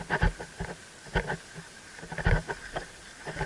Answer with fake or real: real